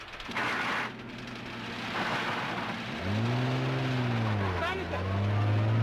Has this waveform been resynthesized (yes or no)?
no